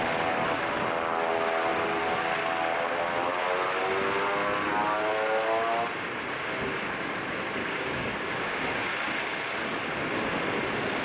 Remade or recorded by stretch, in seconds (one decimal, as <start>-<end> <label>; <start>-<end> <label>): 0.0-7.6 recorded; 7.6-8.7 remade; 8.7-11.0 recorded